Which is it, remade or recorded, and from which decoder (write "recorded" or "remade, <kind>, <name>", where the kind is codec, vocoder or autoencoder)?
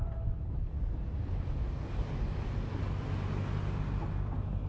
recorded